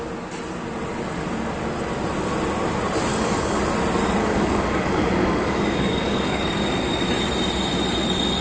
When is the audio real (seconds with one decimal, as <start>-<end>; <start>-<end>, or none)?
0.0-3.1; 3.6-4.2; 6.4-8.4